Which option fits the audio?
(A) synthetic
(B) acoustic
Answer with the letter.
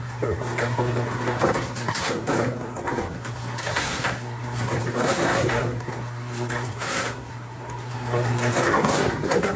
A